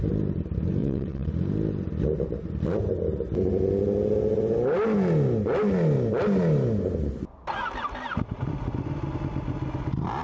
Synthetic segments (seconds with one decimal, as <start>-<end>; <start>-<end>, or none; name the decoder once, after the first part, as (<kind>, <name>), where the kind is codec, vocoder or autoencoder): 0.8-1.3 (vocoder, WaveNeXt)